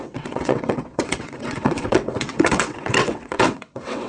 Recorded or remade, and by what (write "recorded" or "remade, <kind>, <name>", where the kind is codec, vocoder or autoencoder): remade, vocoder, WaveNeXt